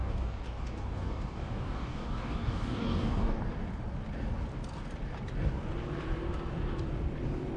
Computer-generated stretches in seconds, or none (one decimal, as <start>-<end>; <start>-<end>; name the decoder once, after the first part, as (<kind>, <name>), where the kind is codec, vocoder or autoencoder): 0.0-3.4 (codec, DAC)